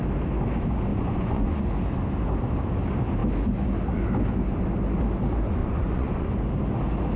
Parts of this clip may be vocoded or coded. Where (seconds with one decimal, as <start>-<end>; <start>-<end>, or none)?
0.9-1.6; 5.6-6.3